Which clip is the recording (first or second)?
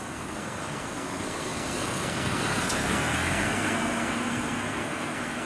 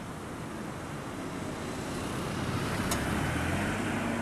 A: second